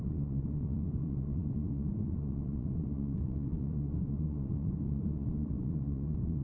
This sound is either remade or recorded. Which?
remade